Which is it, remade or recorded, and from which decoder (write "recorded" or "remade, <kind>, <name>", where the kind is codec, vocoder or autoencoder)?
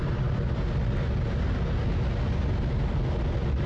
recorded